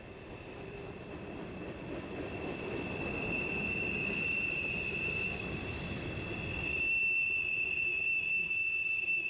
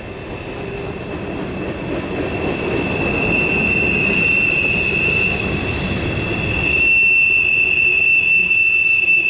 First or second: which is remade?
first